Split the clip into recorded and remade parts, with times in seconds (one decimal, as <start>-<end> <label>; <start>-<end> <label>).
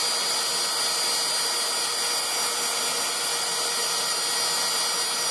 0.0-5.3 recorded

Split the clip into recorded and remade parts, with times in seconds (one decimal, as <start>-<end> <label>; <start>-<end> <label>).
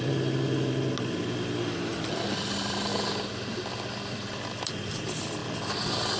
0.0-6.2 recorded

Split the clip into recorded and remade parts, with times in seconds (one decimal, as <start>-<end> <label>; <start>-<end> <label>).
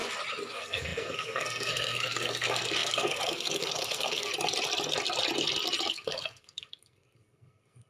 0.0-0.5 recorded; 0.5-4.3 remade; 4.3-5.9 recorded; 5.9-7.9 remade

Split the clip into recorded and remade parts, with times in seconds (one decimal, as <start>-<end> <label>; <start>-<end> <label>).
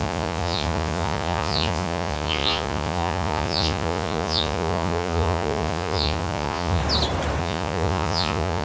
0.0-6.8 remade; 6.8-7.4 recorded; 7.4-8.6 remade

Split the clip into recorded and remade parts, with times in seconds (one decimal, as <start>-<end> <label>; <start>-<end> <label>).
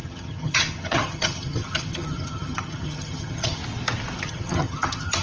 0.0-3.6 remade; 3.6-4.2 recorded; 4.2-5.2 remade